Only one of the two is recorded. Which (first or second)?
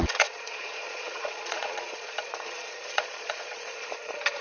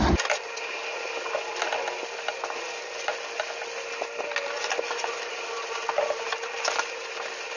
second